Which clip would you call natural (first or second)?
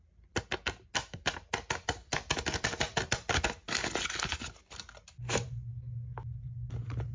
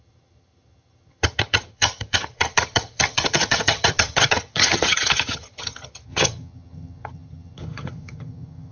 first